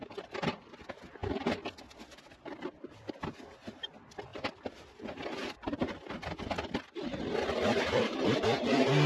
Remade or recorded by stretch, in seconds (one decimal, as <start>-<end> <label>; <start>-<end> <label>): 0.0-9.1 recorded